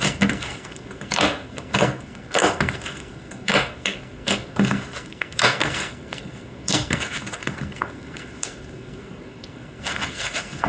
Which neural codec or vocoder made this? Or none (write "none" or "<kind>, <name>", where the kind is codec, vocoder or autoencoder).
codec, SNAC